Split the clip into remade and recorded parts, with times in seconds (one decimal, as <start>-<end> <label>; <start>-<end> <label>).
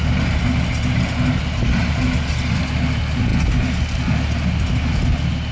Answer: 0.0-5.5 recorded